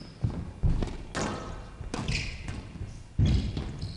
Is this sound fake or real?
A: real